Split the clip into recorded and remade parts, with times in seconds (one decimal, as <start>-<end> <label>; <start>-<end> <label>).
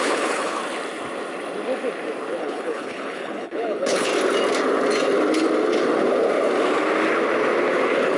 0.0-0.6 remade; 0.6-2.4 recorded; 2.4-4.1 remade; 4.1-8.2 recorded